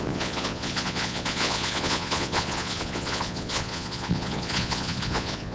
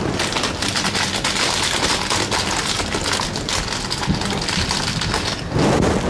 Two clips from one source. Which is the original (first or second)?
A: second